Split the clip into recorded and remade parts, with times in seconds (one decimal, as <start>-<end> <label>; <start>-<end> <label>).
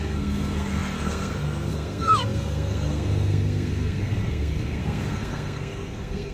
0.0-6.3 remade